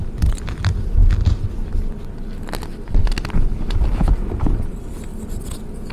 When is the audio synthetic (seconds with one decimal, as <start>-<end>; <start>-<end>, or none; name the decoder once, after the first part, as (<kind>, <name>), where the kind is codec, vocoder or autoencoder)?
none

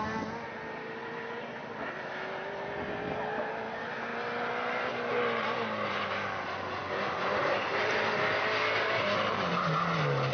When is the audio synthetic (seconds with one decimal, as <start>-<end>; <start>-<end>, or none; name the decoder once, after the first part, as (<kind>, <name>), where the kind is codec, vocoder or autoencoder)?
none

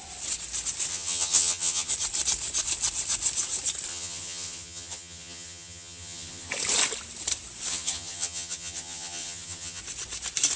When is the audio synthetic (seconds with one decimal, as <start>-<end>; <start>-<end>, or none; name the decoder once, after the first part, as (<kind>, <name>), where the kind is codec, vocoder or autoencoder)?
0.9-1.9 (vocoder, HiFi-GAN); 3.9-6.5; 7.7-9.8